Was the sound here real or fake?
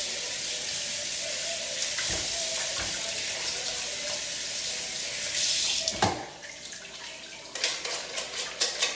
real